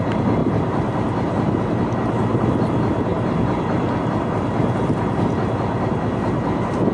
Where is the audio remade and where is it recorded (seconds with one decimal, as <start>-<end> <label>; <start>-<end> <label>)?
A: 0.0-6.9 recorded